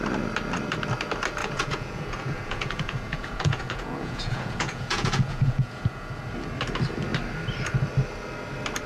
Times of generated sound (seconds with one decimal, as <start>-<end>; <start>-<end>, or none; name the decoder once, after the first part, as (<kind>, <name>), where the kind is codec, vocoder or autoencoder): 1.4-6.1 (vocoder, Vocos)